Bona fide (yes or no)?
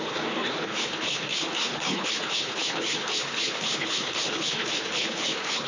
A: no